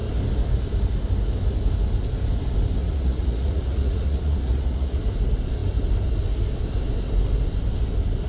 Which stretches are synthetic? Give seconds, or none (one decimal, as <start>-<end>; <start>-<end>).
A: 2.8-5.0